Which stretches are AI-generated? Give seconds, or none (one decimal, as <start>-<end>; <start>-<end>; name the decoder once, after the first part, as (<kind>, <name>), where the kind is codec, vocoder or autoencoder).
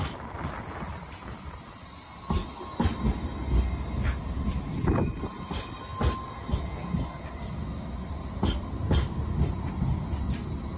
none